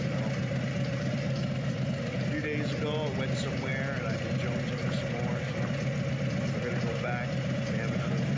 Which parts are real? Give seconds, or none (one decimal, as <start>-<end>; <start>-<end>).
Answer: 0.0-8.4